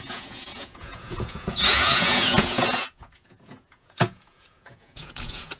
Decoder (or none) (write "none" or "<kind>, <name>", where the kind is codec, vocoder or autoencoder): vocoder, Vocos